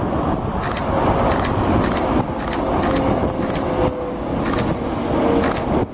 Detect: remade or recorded recorded